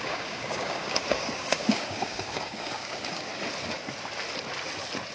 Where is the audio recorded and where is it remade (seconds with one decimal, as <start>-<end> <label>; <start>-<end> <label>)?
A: 0.0-3.3 remade; 3.3-5.1 recorded